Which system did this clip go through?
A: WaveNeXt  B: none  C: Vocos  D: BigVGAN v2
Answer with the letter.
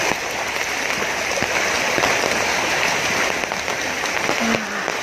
B